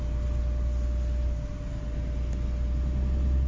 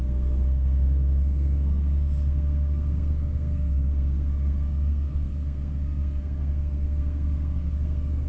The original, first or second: first